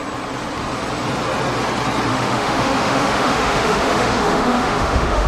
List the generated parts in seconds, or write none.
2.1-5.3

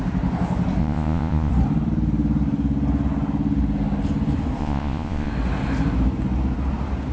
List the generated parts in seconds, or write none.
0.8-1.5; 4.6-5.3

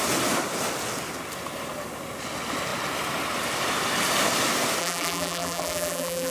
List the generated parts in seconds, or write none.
4.8-6.3

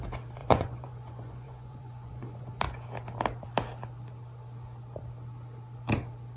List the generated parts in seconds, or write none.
0.4-2.6

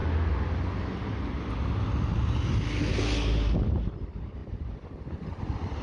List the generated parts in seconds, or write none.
none

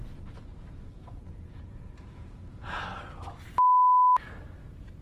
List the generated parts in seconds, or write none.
0.5-2.8